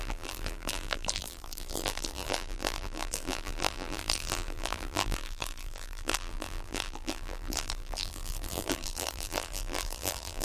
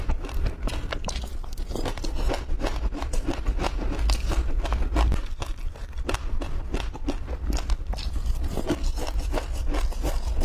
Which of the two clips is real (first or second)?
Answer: second